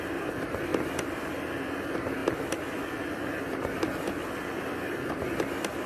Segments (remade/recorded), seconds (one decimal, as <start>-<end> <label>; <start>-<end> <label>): 0.0-5.9 recorded